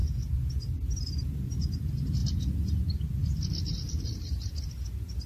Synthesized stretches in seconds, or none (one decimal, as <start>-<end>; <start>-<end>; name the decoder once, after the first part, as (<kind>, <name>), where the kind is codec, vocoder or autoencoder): none

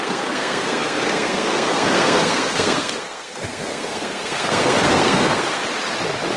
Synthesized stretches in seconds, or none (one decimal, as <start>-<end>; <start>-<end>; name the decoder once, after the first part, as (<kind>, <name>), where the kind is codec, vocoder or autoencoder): 0.0-5.6 (codec, SNAC)